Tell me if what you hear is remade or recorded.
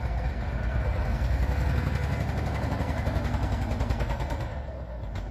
remade